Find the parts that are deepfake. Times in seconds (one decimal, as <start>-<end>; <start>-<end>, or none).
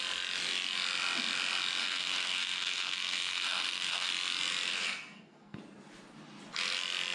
1.8-4.1; 4.7-5.6